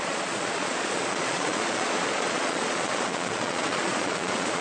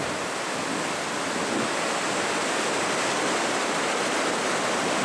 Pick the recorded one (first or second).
second